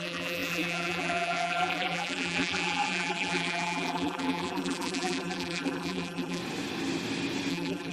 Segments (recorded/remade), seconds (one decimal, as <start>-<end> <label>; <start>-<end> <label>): 0.0-6.4 remade; 6.4-7.5 recorded; 7.5-7.9 remade